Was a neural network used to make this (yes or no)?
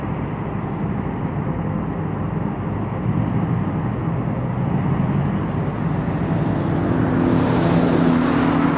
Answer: no